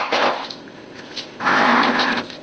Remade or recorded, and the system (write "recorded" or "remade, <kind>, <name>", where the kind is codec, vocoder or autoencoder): remade, codec, ZipCodec